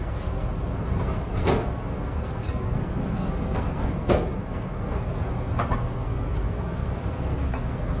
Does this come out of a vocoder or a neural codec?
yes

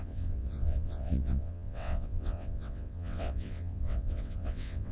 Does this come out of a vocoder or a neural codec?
yes